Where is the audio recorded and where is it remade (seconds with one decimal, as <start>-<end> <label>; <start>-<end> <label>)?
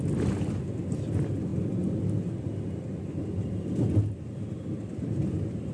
0.0-5.7 recorded